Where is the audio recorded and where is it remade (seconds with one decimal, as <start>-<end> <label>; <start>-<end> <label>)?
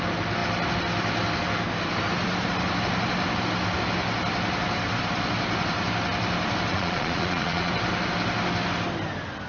0.0-6.7 recorded; 6.7-7.7 remade; 7.7-9.5 recorded